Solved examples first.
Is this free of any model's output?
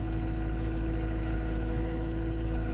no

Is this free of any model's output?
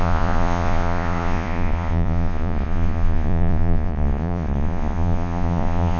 no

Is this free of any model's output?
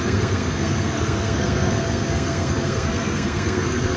no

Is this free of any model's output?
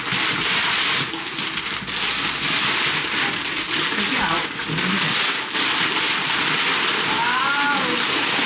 yes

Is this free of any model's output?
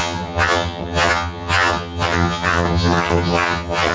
no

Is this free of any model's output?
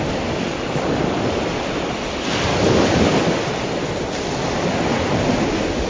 yes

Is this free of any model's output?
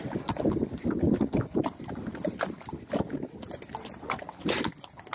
yes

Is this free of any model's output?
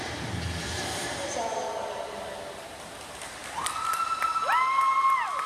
yes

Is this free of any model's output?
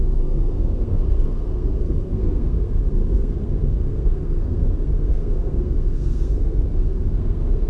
no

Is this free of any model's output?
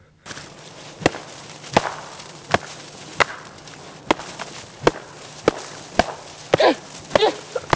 yes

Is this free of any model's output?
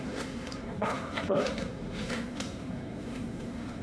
no